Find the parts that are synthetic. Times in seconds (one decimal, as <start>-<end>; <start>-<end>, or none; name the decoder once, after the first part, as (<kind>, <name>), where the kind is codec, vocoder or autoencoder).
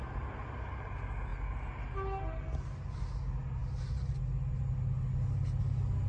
none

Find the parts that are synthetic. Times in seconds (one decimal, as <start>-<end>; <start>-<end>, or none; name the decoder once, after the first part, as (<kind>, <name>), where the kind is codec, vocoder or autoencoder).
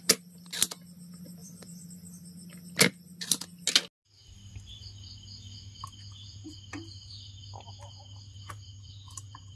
1.4-1.9 (vocoder, BigVGAN v2); 4.2-4.8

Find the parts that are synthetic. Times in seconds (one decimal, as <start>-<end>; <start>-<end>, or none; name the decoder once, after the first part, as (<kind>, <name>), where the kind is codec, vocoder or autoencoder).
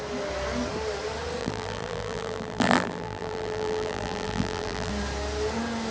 1.4-4.9 (vocoder, BigVGAN v2)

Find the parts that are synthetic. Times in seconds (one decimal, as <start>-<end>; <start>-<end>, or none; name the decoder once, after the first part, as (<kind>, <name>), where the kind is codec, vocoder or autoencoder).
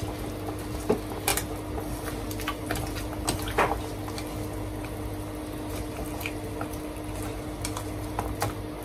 none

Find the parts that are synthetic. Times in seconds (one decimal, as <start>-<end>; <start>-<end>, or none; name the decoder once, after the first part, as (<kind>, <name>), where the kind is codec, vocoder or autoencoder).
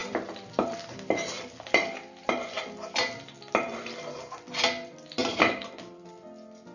0.0-2.6 (vocoder, BigVGAN v2); 5.2-5.8